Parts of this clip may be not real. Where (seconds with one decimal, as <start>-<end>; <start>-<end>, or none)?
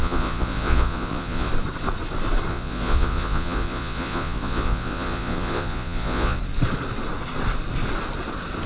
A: 0.0-1.5; 2.5-6.4